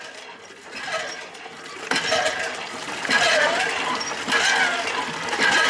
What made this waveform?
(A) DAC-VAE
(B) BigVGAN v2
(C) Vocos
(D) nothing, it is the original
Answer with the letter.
D